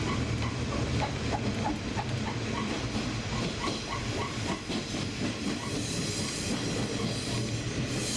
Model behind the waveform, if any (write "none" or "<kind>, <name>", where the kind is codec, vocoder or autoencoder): none